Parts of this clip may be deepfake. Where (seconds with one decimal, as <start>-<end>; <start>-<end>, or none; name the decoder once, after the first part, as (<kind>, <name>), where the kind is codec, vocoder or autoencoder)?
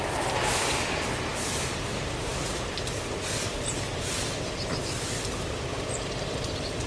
0.0-2.3 (vocoder, BigVGAN v2); 4.8-6.9